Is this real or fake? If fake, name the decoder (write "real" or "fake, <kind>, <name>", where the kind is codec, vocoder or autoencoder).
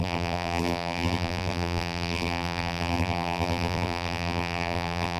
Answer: fake, vocoder, BigVGAN v2